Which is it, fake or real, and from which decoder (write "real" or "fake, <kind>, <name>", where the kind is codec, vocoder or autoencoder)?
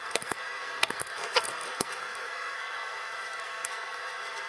fake, codec, SNAC